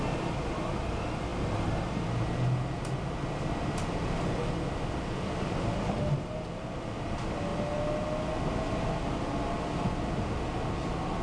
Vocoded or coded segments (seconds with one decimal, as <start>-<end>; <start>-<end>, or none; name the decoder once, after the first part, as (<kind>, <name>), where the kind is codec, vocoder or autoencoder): none